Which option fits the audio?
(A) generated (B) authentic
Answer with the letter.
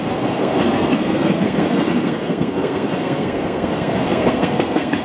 A